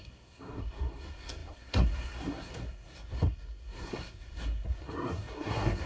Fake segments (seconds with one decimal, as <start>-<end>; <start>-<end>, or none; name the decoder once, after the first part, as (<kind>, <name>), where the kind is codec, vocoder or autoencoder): 0.0-5.9 (codec, SNAC)